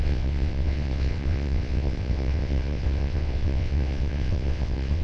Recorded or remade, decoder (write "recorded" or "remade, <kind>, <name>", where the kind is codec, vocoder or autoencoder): remade, vocoder, WaveNeXt